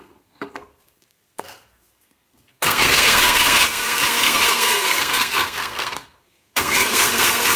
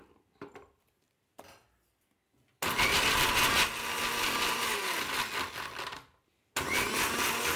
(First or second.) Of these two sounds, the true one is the second